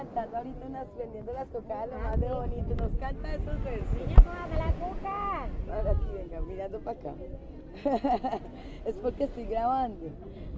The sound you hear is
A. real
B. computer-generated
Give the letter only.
A